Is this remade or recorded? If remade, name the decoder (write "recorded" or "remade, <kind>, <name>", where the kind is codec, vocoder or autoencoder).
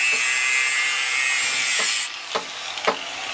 recorded